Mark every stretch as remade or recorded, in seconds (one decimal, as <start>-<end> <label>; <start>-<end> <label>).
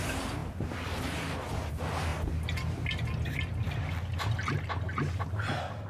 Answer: 0.0-5.9 recorded